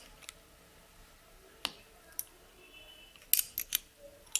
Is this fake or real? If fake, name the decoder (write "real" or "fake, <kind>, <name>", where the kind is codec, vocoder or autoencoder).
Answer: real